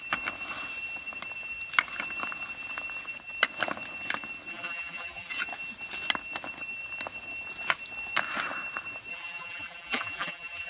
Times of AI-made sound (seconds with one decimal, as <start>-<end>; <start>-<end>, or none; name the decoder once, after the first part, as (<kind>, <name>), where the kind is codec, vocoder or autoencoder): 4.5-5.3 (vocoder, BigVGAN v2); 9.1-10.7